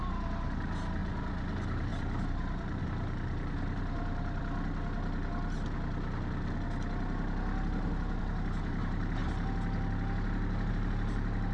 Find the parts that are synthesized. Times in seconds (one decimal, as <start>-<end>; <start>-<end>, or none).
0.0-1.0; 1.5-4.4; 8.2-9.2; 10.7-11.5

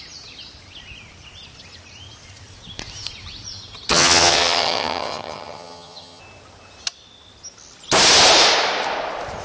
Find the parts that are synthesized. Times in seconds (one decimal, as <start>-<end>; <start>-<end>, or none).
3.9-6.2